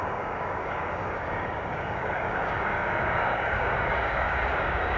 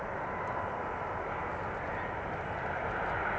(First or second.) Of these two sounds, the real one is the second